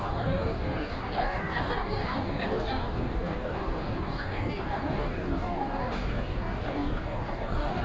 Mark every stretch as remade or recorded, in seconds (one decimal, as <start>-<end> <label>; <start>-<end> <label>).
0.0-7.8 remade